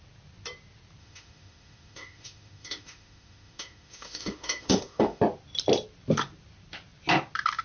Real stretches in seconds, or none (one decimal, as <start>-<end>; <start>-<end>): 0.0-1.0; 5.2-7.6